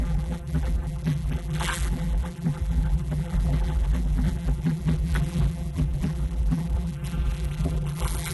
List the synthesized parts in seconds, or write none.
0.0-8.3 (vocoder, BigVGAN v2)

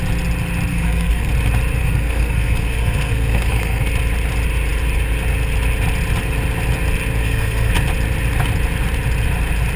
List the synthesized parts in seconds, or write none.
0.7-1.3 (codec, SNAC); 1.8-3.8; 7.2-7.7

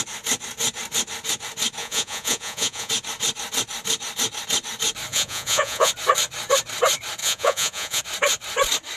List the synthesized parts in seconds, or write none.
1.8-2.9 (vocoder, Vocos); 5.1-5.9; 7.2-8.0

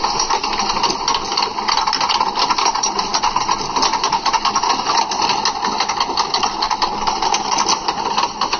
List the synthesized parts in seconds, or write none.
none

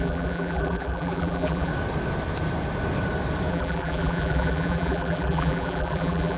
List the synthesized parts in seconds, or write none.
0.0-1.7 (vocoder, BigVGAN v2); 3.5-6.4

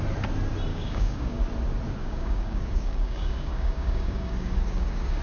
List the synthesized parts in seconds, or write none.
0.7-1.4 (codec, DAC); 2.0-5.2

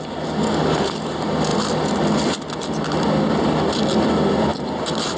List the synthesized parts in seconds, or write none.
1.5-3.2 (vocoder, BigVGAN v2); 4.5-5.2